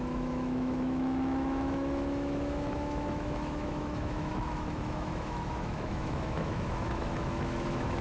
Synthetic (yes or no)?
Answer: yes